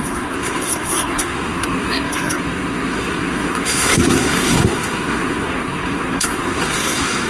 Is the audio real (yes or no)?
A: no